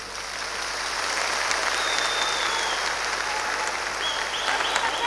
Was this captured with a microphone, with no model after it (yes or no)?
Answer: yes